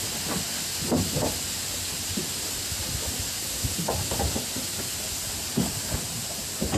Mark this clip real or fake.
real